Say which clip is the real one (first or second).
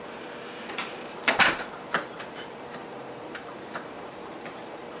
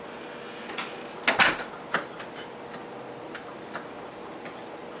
second